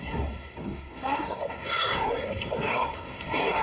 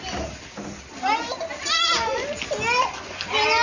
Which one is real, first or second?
second